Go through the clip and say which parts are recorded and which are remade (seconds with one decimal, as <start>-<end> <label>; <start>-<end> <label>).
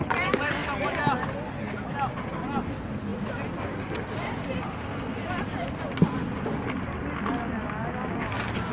0.0-8.7 recorded